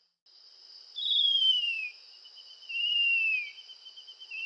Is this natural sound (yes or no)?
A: yes